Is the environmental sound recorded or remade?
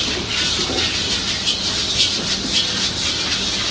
recorded